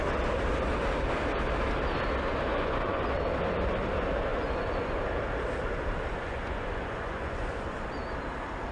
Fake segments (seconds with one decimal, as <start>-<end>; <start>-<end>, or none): 2.5-3.2; 4.3-5.0; 6.1-7.9